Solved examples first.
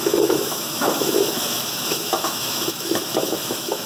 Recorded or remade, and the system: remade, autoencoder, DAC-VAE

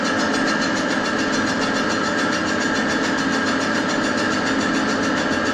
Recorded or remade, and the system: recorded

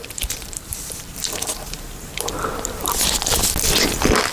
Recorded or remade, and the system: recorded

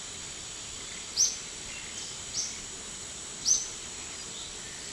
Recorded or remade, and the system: recorded